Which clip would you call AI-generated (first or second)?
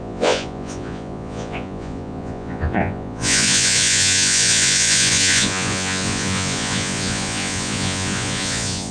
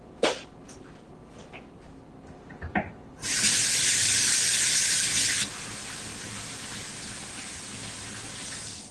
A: first